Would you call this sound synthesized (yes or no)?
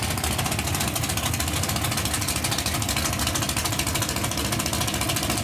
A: no